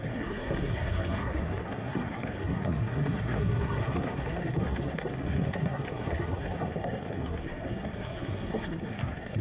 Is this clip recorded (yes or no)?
no